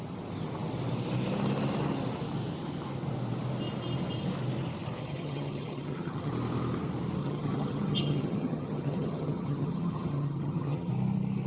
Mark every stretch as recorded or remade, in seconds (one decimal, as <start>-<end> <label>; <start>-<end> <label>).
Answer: 0.0-5.0 recorded; 5.0-6.3 remade; 6.3-7.2 recorded; 7.2-10.9 remade; 10.9-11.5 recorded